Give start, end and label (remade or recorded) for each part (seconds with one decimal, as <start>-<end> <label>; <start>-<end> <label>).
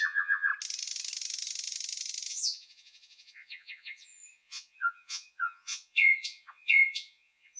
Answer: 0.0-0.5 remade; 0.5-2.3 recorded; 2.3-7.6 remade